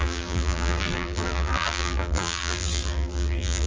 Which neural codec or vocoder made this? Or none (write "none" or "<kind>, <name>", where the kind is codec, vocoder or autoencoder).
vocoder, BigVGAN v2